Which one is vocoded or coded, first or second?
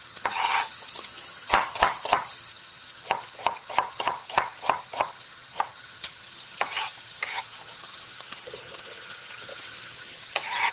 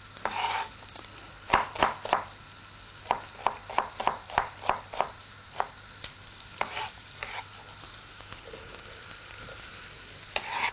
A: first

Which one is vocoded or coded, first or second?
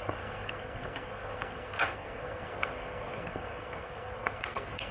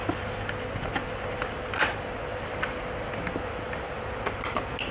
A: first